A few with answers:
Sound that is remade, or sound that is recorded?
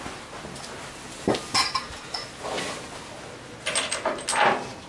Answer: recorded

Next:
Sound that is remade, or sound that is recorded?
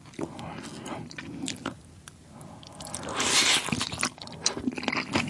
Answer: recorded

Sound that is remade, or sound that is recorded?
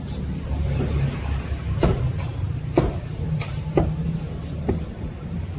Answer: remade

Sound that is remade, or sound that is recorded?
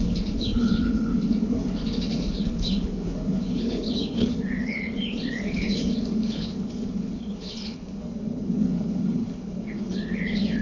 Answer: remade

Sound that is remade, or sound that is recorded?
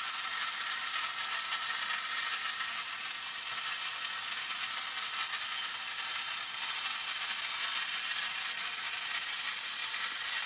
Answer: recorded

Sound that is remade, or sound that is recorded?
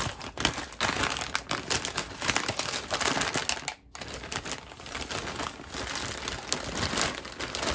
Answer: recorded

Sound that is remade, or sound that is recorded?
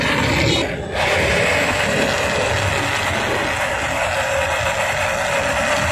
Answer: recorded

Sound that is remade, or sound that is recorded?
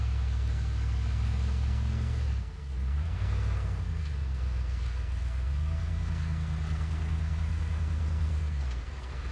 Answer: remade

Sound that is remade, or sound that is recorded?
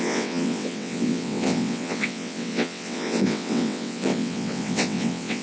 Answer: remade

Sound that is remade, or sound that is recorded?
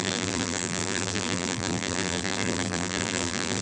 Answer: remade